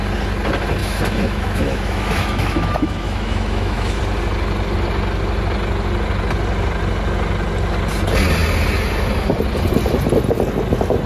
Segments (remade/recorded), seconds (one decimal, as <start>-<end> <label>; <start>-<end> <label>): 0.0-0.8 recorded; 0.8-4.0 remade; 4.0-11.1 recorded

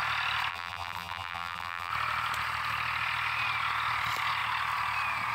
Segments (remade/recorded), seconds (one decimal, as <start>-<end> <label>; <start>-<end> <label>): 0.0-0.5 recorded; 0.5-1.9 remade; 1.9-5.3 recorded

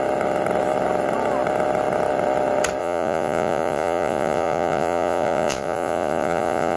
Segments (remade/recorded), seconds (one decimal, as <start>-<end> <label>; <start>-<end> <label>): 0.0-2.8 recorded; 2.8-6.8 remade

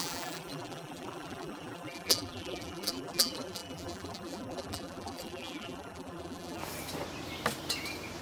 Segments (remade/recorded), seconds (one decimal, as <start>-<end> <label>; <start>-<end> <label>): 0.0-6.6 remade; 6.6-8.2 recorded

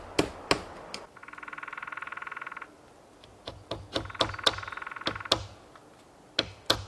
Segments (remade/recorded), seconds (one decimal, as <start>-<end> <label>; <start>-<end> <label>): 0.0-6.9 recorded

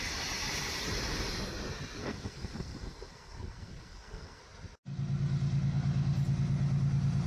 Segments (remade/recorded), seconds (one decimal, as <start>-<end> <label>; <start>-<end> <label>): 0.0-2.0 recorded; 2.0-4.4 remade; 4.4-7.3 recorded